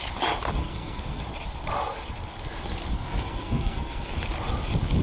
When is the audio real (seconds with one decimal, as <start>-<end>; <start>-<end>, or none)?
0.0-0.6; 1.2-2.9; 4.1-5.0